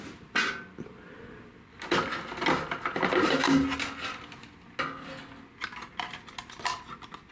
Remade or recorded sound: recorded